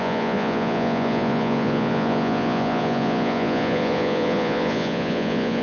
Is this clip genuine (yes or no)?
no